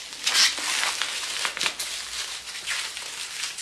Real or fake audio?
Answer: real